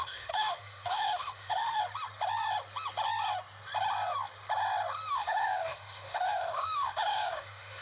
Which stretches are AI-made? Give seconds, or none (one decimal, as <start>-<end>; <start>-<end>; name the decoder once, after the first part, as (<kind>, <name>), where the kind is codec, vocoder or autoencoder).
0.0-1.8 (autoencoder, DAC-VAE); 5.1-7.8